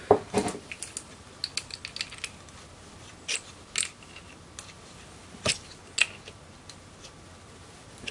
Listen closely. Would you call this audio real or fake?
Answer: real